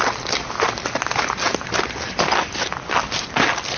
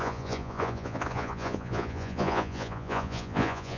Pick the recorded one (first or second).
first